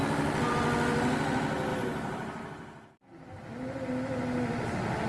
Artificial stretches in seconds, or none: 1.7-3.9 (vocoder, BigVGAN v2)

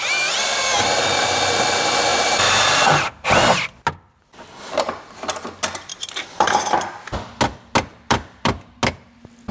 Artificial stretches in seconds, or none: 2.1-3.3 (vocoder, BigVGAN v2); 5.9-6.7; 7.9-8.7

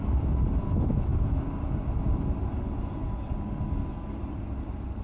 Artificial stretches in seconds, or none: none

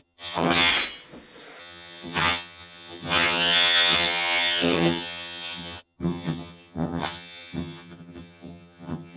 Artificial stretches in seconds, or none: 0.0-0.7 (vocoder, HiFi-GAN); 1.6-9.2

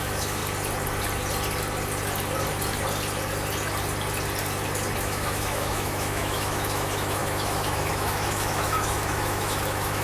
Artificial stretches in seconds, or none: 0.0-0.4 (autoencoder, DAC-VAE); 5.0-10.0

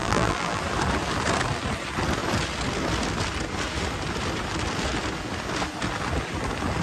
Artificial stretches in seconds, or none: 0.0-0.6 (vocoder, BigVGAN v2)

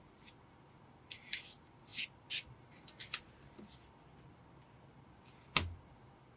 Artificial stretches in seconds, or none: none

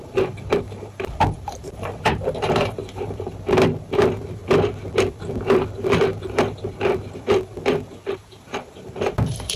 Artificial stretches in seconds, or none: 0.0-2.8 (vocoder, BigVGAN v2); 4.0-4.4; 5.3-6.1; 8.1-9.6